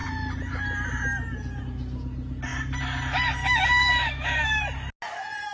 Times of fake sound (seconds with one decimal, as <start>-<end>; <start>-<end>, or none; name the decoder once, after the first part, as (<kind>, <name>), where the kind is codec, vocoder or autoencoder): 3.4-4.6 (autoencoder, DAC-VAE)